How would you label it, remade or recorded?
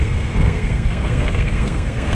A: remade